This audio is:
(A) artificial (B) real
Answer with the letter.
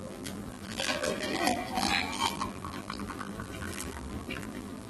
A